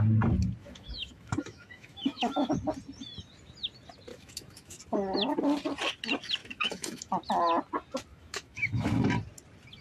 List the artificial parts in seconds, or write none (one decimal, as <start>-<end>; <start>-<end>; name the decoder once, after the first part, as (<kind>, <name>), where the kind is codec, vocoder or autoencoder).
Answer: 0.6-2.5 (autoencoder, DAC-VAE); 4.1-4.8; 6.4-7.1; 8.1-8.9